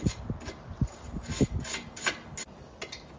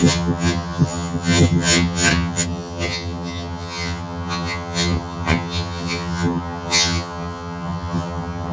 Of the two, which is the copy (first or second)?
second